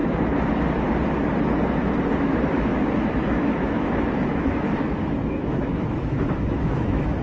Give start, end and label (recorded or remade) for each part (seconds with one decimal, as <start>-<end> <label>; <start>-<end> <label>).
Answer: 0.0-2.2 recorded; 2.2-7.2 remade

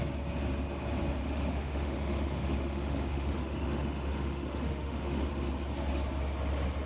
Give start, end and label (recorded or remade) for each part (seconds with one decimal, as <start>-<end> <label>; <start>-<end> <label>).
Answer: 0.0-1.2 recorded; 1.2-5.3 remade; 5.3-6.9 recorded

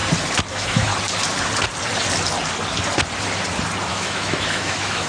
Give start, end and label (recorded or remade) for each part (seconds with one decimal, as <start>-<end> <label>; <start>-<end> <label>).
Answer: 0.0-0.5 recorded; 0.5-0.9 remade; 0.9-3.8 recorded; 3.8-5.1 remade

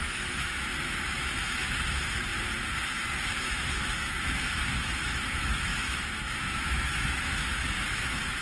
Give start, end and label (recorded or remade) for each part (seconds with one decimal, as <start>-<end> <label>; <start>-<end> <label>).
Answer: 0.0-2.3 remade; 2.3-3.4 recorded; 3.4-8.4 remade